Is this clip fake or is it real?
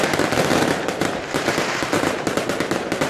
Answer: fake